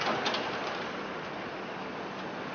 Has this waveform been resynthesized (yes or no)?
no